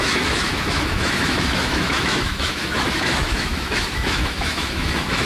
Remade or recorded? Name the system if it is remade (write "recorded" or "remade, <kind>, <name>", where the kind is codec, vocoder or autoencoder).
remade, autoencoder, DAC-VAE